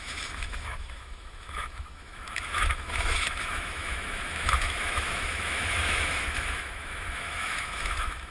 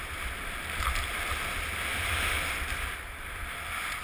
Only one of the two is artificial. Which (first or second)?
first